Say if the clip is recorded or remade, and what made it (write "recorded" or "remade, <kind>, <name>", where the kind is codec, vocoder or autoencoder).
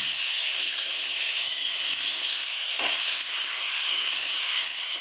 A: remade, codec, SNAC